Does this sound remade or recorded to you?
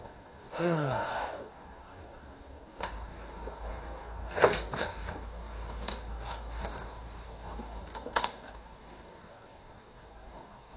remade